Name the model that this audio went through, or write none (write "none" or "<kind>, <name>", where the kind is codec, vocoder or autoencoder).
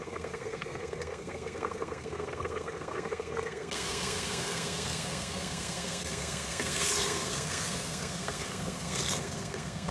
codec, SNAC